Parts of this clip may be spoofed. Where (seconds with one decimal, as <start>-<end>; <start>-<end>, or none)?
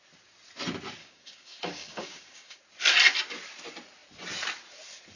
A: 1.0-2.6